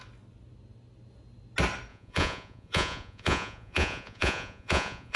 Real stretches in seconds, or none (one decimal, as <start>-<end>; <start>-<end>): 0.0-1.9